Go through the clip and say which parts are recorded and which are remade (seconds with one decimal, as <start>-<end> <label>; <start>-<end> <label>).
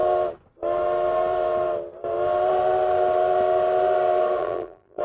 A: 0.0-4.4 recorded; 4.4-5.0 remade